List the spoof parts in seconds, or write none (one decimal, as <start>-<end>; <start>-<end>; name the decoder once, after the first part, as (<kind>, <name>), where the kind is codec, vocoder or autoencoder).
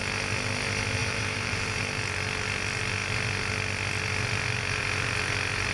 1.0-1.8 (vocoder, BigVGAN v2)